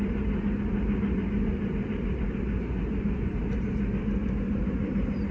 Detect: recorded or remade recorded